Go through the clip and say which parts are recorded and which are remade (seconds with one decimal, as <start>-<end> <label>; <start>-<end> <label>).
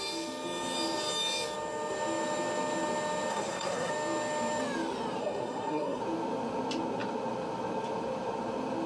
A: 0.0-3.3 recorded; 3.3-3.9 remade; 3.9-5.2 recorded; 5.2-6.0 remade; 6.0-8.9 recorded